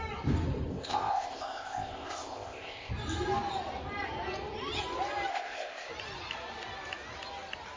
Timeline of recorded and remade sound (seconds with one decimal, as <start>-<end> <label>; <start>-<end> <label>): 0.0-0.7 recorded; 0.7-2.9 remade; 2.9-5.3 recorded; 5.3-5.9 remade; 5.9-7.8 recorded